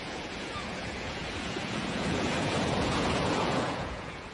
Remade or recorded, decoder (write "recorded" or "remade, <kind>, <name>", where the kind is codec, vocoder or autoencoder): remade, vocoder, Vocos